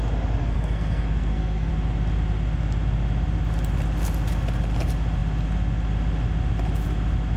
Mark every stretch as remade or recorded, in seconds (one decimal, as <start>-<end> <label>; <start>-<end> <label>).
0.0-0.4 recorded; 0.4-1.7 remade; 1.7-7.4 recorded